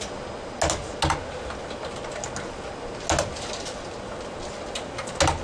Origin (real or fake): real